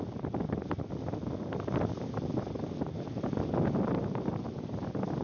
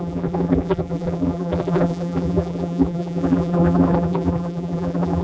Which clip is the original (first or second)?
first